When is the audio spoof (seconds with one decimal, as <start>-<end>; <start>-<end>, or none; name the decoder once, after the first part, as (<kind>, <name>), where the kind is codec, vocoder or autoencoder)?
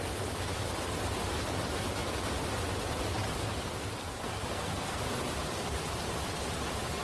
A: 4.0-5.0 (codec, SNAC)